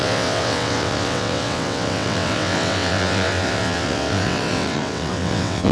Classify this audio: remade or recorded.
remade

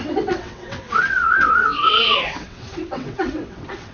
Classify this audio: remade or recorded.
remade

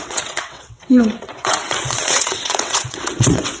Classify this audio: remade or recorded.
remade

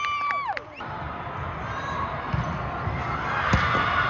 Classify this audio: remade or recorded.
recorded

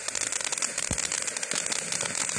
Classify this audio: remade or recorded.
recorded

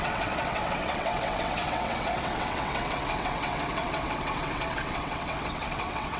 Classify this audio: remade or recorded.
remade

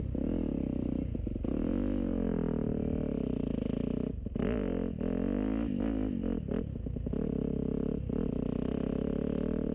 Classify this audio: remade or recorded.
recorded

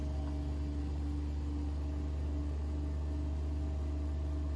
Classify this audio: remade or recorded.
recorded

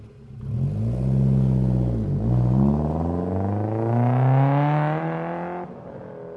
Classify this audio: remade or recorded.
recorded